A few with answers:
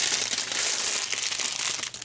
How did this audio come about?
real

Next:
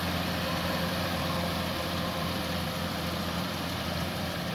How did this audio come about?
fake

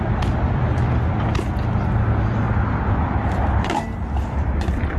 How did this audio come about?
fake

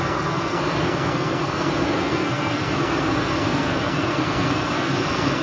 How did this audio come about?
fake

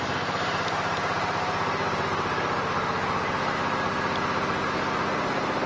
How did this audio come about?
real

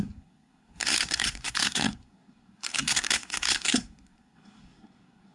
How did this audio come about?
fake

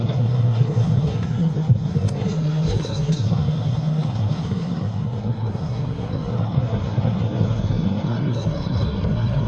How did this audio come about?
fake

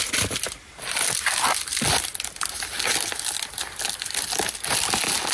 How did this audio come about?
real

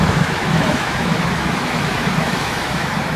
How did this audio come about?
fake